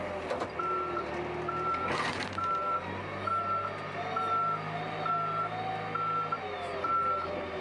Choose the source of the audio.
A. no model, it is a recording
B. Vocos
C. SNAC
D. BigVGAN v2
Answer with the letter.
A